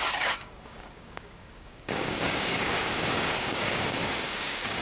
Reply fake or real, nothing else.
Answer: fake